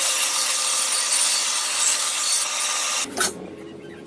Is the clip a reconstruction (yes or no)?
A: no